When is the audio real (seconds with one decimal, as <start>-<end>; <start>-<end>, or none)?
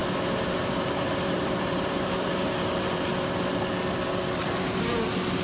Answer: 3.2-4.4; 5.0-5.4